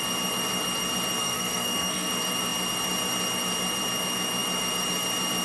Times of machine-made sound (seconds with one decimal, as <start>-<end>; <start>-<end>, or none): 1.2-2.1